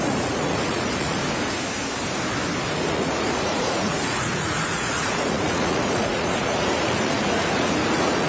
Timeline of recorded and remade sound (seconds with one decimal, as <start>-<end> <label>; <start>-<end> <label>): 0.0-1.2 remade; 1.2-2.6 recorded; 2.6-8.3 remade